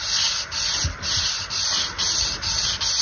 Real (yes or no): yes